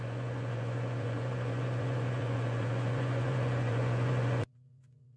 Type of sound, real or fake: fake